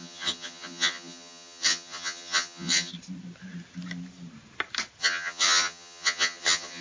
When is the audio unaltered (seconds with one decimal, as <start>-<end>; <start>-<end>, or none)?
2.9-5.0